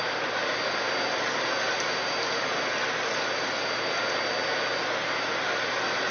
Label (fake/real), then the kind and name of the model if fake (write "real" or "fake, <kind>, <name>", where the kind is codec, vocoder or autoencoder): real